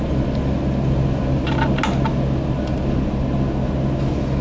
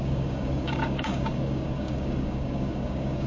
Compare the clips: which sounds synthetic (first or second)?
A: second